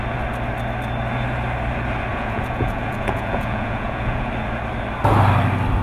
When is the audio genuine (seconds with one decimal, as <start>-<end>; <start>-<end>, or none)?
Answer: 0.0-2.1; 4.3-5.8